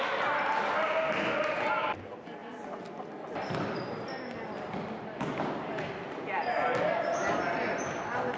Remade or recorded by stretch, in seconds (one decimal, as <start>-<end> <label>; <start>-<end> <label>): 0.0-8.4 recorded